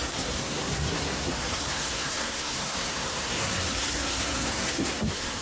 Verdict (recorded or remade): remade